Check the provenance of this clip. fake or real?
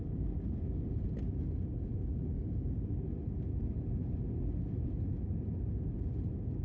real